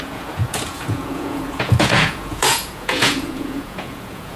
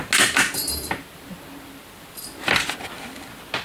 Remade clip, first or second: first